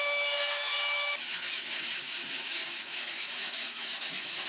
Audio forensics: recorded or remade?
remade